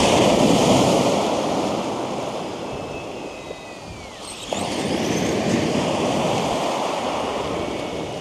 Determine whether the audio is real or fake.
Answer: real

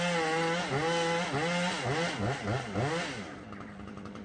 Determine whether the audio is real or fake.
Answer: real